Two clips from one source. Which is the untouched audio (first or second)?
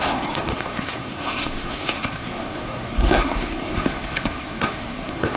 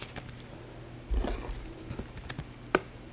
second